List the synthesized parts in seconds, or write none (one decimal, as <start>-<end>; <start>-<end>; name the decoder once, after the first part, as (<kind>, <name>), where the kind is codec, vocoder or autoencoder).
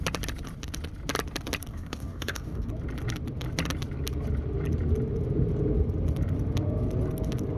1.7-2.7 (codec, DAC)